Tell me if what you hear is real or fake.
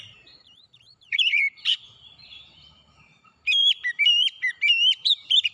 fake